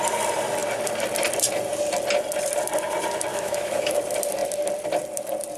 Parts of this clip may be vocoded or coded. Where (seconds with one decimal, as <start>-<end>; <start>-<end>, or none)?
3.3-4.0